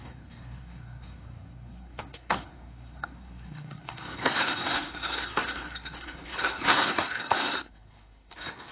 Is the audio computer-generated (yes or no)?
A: yes